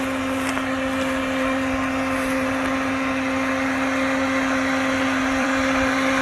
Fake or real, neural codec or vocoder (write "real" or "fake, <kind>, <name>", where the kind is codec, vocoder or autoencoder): fake, vocoder, BigVGAN v2